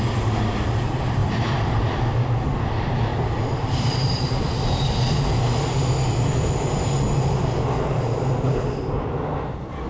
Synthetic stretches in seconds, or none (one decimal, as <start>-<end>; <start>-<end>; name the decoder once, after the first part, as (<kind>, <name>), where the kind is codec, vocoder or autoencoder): 1.2-1.9 (vocoder, BigVGAN v2); 3.1-4.4